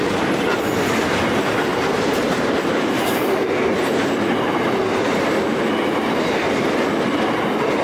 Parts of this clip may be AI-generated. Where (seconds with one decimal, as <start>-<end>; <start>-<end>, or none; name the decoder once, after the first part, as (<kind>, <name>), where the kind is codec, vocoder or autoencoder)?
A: 1.7-3.7 (vocoder, BigVGAN v2)